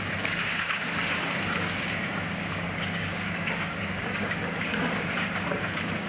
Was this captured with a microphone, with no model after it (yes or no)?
no